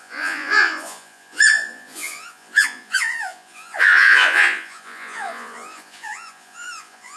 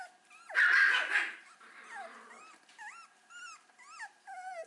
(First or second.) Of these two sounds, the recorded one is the second